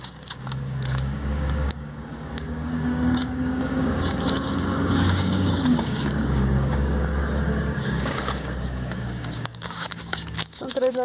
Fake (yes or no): yes